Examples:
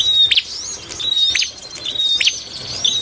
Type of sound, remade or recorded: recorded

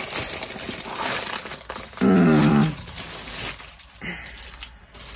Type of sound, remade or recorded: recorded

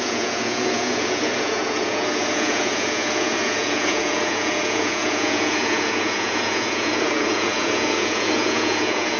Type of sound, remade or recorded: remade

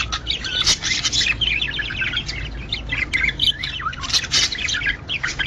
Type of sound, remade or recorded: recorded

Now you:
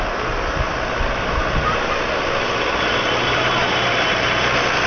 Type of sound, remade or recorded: recorded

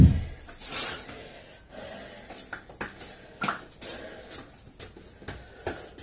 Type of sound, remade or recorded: recorded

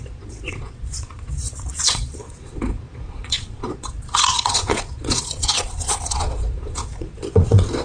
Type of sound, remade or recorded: remade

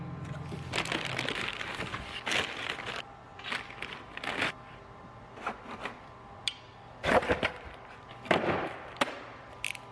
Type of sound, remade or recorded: recorded